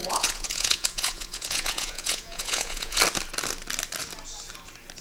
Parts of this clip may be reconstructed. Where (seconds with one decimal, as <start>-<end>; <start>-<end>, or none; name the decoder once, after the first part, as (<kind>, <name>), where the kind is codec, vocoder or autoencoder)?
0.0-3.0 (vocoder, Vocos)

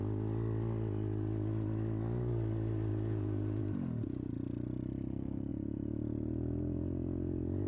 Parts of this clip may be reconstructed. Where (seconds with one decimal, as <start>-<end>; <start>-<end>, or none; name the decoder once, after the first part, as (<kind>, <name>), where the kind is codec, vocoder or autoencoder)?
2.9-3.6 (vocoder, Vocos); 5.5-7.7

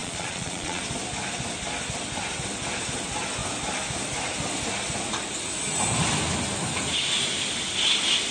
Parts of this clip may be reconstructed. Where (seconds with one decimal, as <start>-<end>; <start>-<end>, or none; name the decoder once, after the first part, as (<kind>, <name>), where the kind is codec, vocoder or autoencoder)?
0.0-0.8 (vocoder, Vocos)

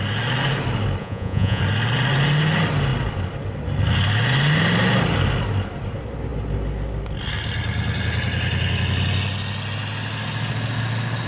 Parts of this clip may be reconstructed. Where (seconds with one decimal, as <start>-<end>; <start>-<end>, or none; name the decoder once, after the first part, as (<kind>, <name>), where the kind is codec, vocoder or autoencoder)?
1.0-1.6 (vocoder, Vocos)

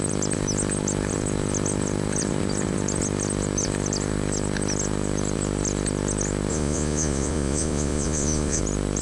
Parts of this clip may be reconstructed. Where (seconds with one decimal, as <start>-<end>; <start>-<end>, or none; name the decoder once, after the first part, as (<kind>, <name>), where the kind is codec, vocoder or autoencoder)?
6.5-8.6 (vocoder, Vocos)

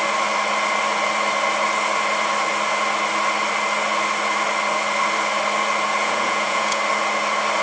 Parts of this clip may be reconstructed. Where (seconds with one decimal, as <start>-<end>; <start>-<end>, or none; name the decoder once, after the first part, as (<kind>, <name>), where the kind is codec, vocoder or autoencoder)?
6.0-6.8 (vocoder, Vocos)

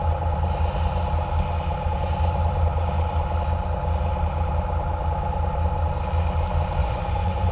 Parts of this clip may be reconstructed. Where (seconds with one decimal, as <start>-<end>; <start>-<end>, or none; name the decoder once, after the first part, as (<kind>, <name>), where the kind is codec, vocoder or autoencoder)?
6.8-7.5 (vocoder, Vocos)

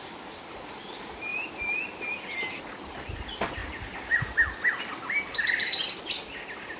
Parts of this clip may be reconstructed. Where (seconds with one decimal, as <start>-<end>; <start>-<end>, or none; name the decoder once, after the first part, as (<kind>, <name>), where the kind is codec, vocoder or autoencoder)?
none